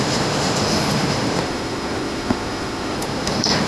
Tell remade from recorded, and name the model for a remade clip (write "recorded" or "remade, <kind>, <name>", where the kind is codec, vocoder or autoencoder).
remade, autoencoder, DAC-VAE